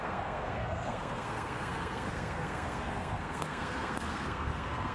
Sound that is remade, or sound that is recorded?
remade